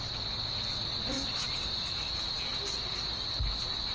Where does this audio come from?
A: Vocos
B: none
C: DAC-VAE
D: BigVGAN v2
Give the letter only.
B